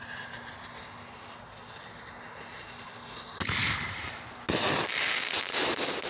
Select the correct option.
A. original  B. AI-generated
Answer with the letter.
A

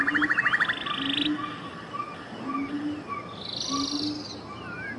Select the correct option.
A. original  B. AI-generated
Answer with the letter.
A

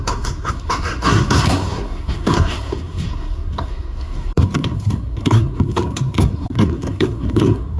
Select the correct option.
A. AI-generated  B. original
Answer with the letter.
A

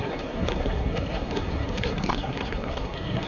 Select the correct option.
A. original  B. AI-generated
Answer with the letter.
B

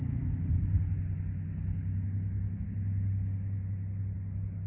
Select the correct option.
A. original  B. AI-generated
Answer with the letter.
A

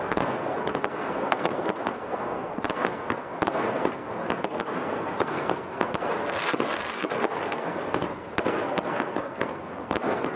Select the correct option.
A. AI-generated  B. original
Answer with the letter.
A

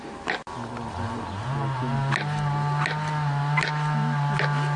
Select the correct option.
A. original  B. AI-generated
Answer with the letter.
A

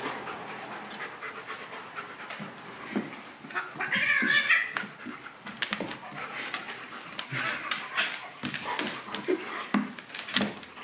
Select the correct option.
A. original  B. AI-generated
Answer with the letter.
A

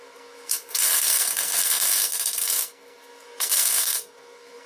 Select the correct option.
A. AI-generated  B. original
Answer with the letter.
A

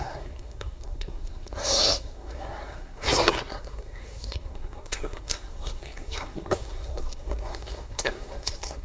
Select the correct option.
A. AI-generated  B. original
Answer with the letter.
A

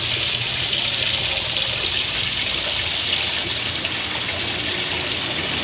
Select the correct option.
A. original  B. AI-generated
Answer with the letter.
A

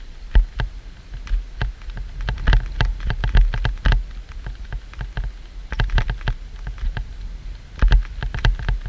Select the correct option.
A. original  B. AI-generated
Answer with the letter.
A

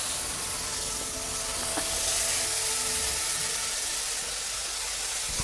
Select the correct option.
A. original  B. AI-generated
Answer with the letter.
A